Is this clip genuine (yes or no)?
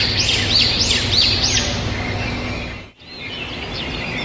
yes